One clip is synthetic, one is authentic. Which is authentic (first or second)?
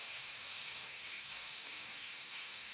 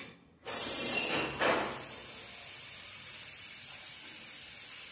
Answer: second